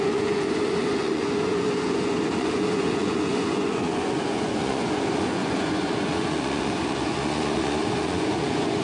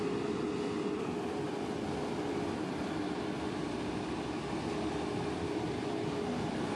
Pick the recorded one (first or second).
second